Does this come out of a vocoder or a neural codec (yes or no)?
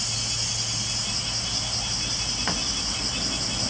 no